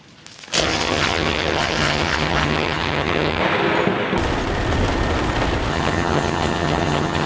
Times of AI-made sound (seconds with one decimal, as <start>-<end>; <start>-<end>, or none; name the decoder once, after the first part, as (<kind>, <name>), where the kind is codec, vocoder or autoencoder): 0.6-3.4 (vocoder, HiFi-GAN); 5.7-7.3

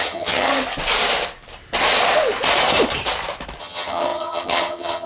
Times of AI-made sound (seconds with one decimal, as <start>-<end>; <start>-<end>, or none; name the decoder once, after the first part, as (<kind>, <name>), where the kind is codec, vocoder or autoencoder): 0.0-0.5 (vocoder, HiFi-GAN); 3.6-5.1